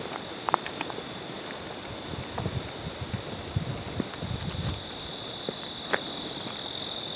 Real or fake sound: real